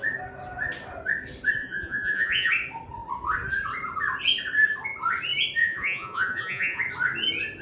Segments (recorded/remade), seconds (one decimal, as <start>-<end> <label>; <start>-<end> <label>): 0.0-1.6 recorded; 1.6-2.5 remade; 2.5-5.6 recorded; 5.6-6.8 remade; 6.8-7.6 recorded